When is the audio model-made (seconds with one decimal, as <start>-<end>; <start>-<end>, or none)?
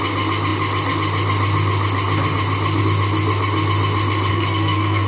4.3-5.1